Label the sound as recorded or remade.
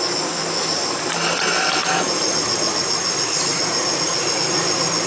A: recorded